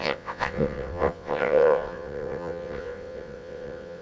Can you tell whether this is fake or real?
fake